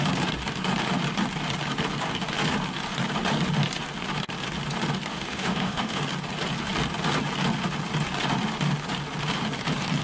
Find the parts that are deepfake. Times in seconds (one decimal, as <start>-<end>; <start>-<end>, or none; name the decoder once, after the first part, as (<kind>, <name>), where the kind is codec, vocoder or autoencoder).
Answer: 5.1-6.0 (autoencoder, DAC-VAE)